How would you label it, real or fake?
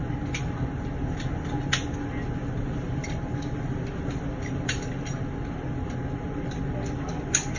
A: real